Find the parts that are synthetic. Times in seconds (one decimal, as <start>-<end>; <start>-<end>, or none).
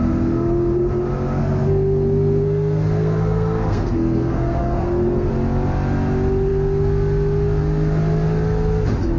1.4-5.3